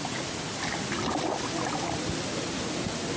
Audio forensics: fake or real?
real